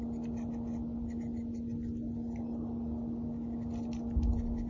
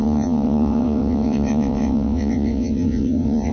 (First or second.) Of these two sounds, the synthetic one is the second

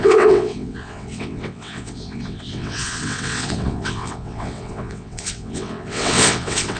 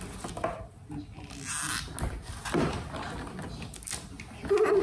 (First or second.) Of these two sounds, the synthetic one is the first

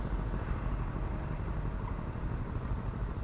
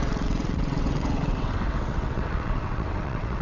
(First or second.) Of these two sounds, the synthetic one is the second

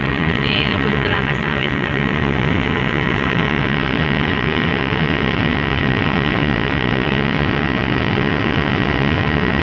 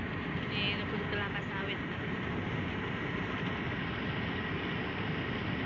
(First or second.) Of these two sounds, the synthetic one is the first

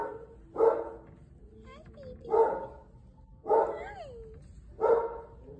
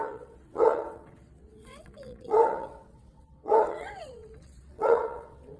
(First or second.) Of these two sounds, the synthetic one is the second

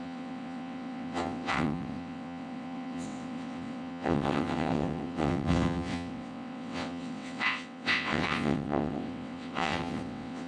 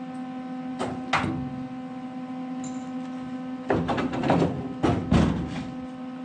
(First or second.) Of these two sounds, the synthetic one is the first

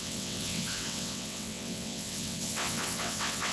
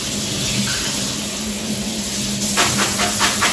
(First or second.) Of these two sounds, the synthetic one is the first